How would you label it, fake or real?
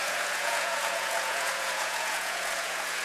fake